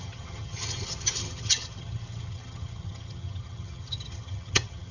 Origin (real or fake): fake